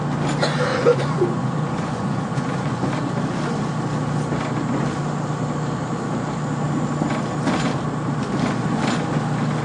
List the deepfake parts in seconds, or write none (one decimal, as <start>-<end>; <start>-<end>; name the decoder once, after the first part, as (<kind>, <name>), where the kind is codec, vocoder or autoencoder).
0.7-2.9 (vocoder, Vocos)